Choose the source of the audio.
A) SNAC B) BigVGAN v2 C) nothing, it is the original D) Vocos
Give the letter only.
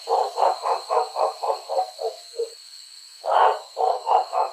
A